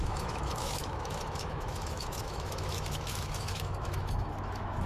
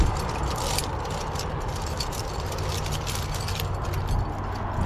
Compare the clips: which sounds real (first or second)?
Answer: second